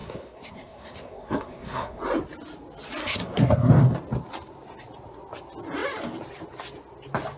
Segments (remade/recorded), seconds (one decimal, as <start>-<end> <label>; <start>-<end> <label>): 0.0-2.0 remade; 2.0-3.0 recorded; 3.0-3.7 remade; 3.7-7.4 recorded